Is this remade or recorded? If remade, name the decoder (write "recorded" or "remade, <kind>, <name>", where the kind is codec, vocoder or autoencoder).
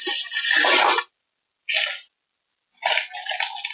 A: recorded